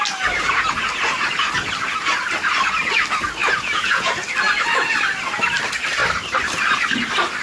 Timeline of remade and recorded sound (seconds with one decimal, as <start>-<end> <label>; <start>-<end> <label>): 0.0-3.4 recorded; 3.4-4.2 remade; 4.2-7.4 recorded